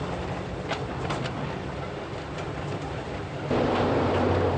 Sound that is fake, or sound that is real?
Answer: real